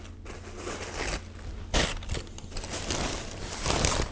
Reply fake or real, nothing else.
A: real